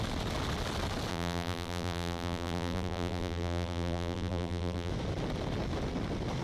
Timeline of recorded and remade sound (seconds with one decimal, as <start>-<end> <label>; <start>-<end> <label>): 0.0-1.1 recorded; 1.1-4.9 remade; 4.9-6.4 recorded